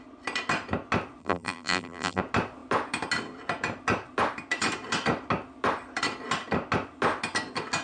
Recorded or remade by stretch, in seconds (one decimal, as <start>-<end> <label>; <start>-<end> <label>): 0.0-1.2 recorded; 1.2-2.2 remade; 2.2-7.8 recorded

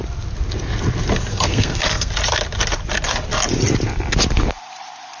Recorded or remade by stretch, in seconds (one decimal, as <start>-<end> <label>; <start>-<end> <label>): 0.0-1.3 recorded; 1.3-2.1 remade; 2.1-5.2 recorded